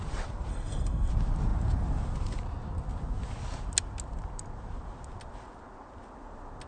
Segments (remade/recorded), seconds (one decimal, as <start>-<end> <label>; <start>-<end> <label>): 0.0-0.5 recorded; 0.5-1.1 remade; 1.1-6.7 recorded